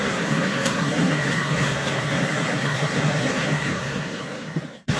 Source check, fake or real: fake